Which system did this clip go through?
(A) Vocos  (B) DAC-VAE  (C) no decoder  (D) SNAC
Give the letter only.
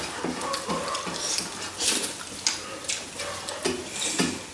C